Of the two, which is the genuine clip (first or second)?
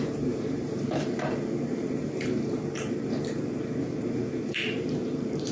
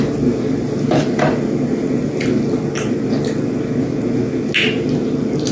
second